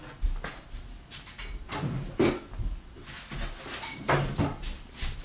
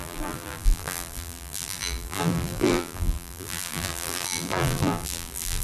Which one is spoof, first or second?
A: second